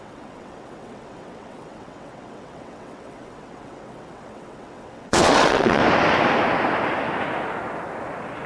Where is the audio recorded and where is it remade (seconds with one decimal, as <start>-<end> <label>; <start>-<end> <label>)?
0.0-5.8 remade; 5.8-8.5 recorded